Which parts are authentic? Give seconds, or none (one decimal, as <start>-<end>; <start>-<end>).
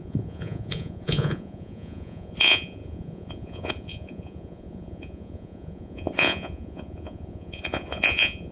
none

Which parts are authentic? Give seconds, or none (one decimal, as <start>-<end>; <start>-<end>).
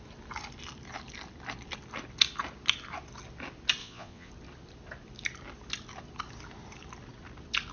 0.0-3.8; 4.3-7.7